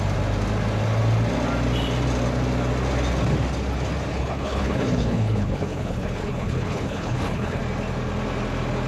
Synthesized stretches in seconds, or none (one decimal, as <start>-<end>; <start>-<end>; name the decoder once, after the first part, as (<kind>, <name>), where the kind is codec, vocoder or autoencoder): 4.1-7.6 (codec, HILCodec)